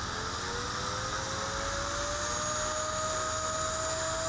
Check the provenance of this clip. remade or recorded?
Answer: recorded